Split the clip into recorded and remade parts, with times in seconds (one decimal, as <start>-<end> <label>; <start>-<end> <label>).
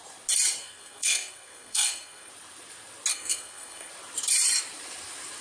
0.0-0.6 recorded; 0.6-2.3 remade; 2.3-3.1 recorded; 3.1-3.9 remade; 3.9-5.4 recorded